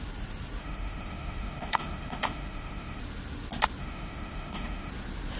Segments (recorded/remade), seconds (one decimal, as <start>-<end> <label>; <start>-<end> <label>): 0.0-0.6 recorded; 0.6-3.0 remade; 3.0-3.8 recorded; 3.8-4.9 remade; 4.9-5.4 recorded